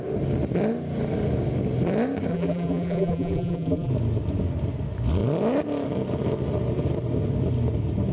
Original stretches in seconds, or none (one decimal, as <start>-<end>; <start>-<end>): 0.0-2.3; 3.9-8.1